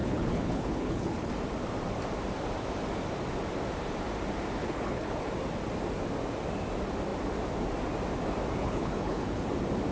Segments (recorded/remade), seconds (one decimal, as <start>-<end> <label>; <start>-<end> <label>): 0.0-1.3 remade; 1.3-4.6 recorded; 4.6-5.3 remade; 5.3-8.6 recorded; 8.6-9.5 remade; 9.5-9.9 recorded